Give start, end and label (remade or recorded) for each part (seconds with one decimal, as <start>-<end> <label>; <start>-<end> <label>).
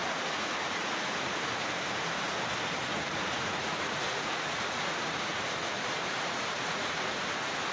0.0-1.4 remade; 1.4-2.9 recorded; 2.9-7.7 remade